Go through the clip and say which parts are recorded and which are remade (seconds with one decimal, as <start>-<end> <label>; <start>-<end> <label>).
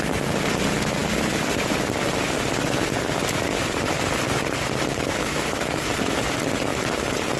0.0-5.1 recorded; 5.1-5.9 remade; 5.9-7.4 recorded